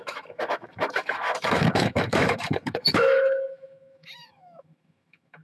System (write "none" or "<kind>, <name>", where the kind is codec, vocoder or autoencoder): autoencoder, DAC-VAE